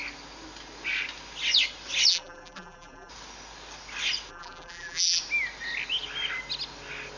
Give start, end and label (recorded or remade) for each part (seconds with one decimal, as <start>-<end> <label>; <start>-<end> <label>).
0.0-2.1 recorded; 2.1-3.1 remade; 3.1-4.3 recorded; 4.3-5.2 remade; 5.2-7.2 recorded